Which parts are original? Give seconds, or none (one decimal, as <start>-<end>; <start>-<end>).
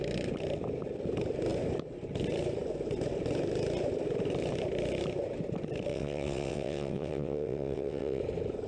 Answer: 0.0-5.9; 8.2-8.7